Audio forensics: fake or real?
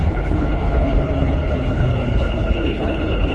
fake